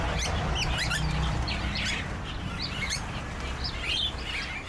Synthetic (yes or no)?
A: no